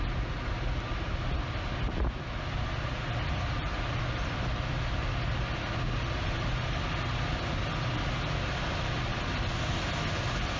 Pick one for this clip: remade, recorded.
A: recorded